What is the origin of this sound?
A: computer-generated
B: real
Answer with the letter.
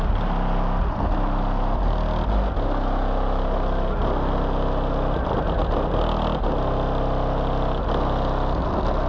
B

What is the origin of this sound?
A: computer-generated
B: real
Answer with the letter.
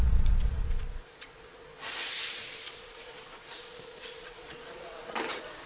A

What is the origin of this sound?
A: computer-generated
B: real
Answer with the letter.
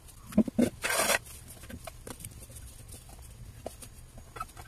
B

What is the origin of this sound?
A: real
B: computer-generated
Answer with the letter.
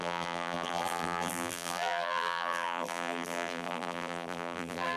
B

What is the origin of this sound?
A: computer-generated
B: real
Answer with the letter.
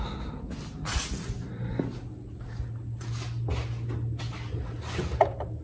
B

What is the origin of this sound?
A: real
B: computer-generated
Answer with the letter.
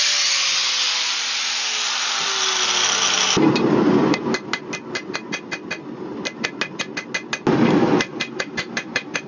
A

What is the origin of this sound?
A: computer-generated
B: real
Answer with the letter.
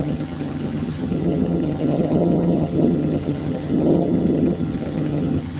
A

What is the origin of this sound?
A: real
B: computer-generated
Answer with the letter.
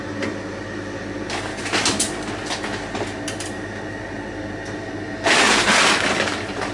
A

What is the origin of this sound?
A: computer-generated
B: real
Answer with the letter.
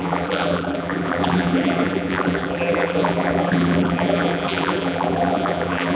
A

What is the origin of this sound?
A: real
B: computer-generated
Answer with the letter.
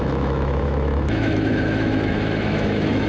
B